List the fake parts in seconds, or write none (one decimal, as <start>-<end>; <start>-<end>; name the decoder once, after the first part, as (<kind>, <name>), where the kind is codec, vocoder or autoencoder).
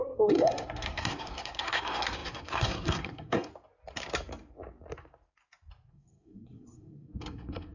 0.0-3.5 (codec, SNAC); 5.9-7.7